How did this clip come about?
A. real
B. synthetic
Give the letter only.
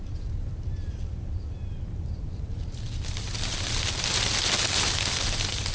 A